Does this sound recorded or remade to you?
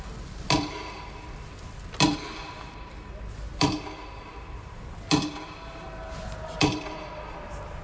recorded